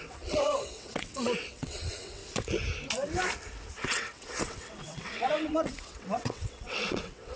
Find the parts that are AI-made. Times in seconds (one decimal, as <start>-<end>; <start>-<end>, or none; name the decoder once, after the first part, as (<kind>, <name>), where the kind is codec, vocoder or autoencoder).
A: 0.0-2.2 (vocoder, WaveNeXt); 3.7-7.4